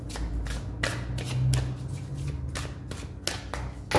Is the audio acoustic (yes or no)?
yes